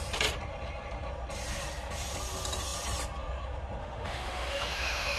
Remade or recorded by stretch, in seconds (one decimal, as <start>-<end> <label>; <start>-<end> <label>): 0.0-3.8 recorded; 3.8-5.2 remade